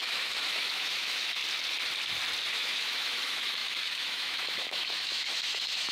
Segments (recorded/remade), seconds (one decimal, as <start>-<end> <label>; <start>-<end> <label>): 0.0-1.4 remade; 1.4-2.5 recorded; 2.5-5.9 remade